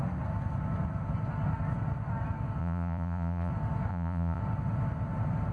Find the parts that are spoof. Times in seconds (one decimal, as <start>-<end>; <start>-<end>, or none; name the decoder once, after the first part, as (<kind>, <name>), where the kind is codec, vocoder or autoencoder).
2.6-3.5 (vocoder, Vocos); 3.9-4.4